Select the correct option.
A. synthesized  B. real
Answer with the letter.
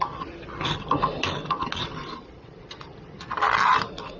B